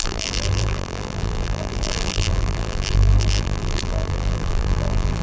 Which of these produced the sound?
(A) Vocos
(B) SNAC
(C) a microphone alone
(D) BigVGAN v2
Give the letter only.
D